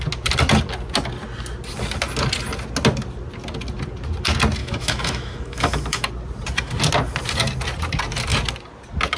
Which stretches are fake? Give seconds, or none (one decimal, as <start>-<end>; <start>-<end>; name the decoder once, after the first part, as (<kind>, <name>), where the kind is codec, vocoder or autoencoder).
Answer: 4.6-6.1 (autoencoder, DAC-VAE)